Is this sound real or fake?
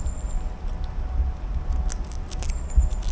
real